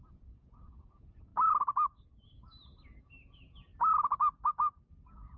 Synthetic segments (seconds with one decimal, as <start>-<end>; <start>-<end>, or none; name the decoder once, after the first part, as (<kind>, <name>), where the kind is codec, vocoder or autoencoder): 0.0-1.3 (vocoder, Vocos); 3.0-3.7; 4.9-5.4